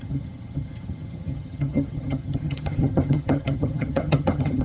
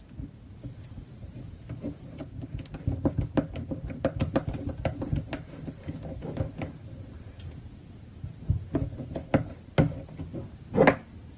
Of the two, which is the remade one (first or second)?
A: first